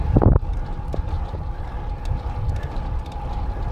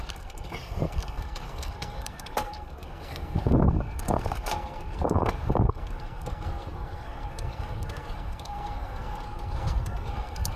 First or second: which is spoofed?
second